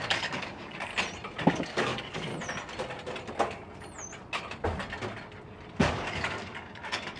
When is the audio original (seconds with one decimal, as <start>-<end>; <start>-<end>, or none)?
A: 0.9-1.4; 2.3-5.7